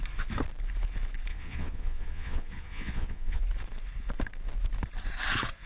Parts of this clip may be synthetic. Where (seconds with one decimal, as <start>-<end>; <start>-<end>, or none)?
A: 1.3-3.4